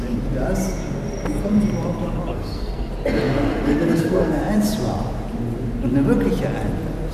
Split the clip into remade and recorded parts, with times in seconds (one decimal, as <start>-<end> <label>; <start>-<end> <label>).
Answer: 0.0-2.3 recorded; 2.3-2.9 remade; 2.9-3.5 recorded; 3.5-4.4 remade; 4.4-7.1 recorded